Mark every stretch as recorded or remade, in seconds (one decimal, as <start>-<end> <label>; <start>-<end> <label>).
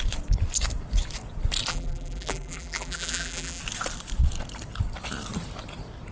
0.0-1.7 recorded; 1.7-3.6 remade; 3.6-6.1 recorded